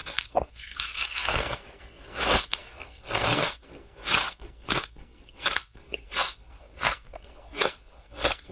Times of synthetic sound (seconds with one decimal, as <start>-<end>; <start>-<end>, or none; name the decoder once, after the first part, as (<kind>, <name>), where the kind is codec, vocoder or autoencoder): 0.0-8.5 (codec, SNAC)